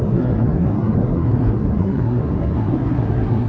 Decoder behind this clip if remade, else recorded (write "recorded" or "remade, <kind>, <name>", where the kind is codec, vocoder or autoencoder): remade, codec, SNAC